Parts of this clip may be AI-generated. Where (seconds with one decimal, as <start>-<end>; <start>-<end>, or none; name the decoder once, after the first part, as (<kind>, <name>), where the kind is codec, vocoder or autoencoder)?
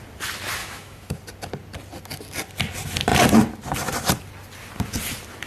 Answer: 0.6-1.2 (autoencoder, DAC-VAE)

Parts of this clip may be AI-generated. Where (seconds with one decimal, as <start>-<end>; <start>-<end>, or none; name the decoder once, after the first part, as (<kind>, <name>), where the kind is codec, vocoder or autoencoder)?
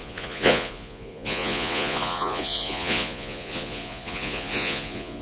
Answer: 0.0-5.2 (vocoder, Vocos)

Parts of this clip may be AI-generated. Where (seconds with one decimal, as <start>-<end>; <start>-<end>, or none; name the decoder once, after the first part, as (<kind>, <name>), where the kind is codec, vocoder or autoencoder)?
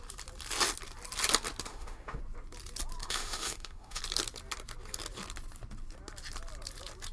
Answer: 1.7-2.2 (autoencoder, DAC-VAE); 3.0-4.0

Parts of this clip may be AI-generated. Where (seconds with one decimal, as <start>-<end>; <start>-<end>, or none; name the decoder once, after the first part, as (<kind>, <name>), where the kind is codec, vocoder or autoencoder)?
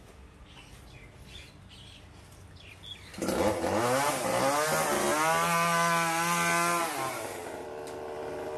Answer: none